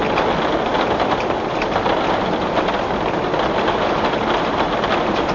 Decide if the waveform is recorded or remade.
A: recorded